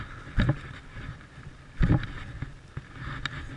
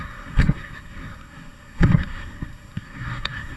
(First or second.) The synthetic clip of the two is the second